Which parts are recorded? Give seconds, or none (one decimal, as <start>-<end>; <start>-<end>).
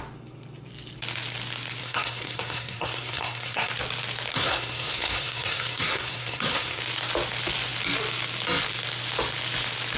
0.0-1.8; 3.7-4.3; 6.8-10.0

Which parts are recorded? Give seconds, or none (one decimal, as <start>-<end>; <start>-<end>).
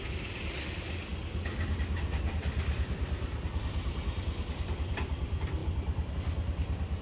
0.0-7.0